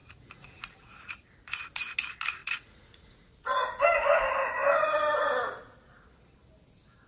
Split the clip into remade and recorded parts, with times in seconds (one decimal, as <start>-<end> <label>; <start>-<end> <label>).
0.0-1.1 remade; 1.1-2.4 recorded; 2.4-3.3 remade; 3.3-7.1 recorded